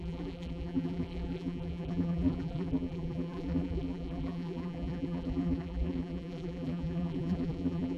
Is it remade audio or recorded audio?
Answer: remade